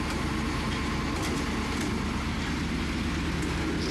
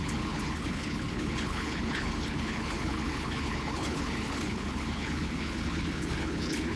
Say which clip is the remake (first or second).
second